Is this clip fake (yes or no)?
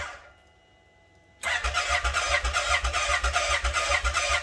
no